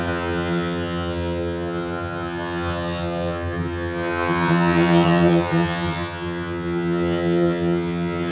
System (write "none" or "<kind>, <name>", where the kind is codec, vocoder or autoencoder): vocoder, HiFi-GAN